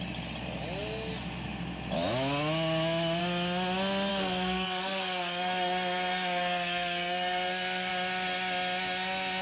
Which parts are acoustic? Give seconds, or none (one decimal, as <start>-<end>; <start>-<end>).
0.0-4.1; 7.9-9.4